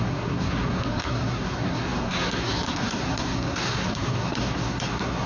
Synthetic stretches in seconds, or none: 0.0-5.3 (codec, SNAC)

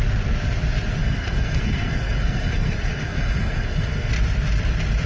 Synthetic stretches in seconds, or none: 1.0-4.1 (codec, SNAC)

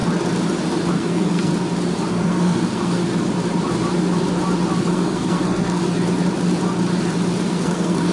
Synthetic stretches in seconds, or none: 0.9-1.5 (codec, SNAC); 2.1-3.0; 4.8-5.8; 7.5-8.1

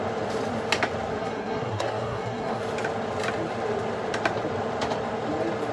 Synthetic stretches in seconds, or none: 1.2-2.6 (codec, SNAC)

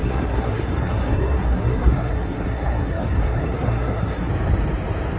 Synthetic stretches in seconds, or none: 0.0-4.3 (codec, SNAC)

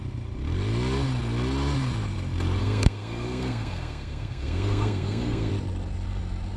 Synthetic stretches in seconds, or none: 2.6-5.5 (codec, SNAC)

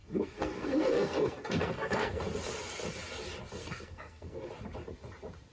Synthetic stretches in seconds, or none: 0.0-2.2 (codec, SNAC); 3.6-4.5